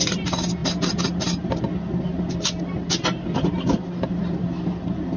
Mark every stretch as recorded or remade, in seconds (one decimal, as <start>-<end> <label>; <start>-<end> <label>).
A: 0.0-5.2 recorded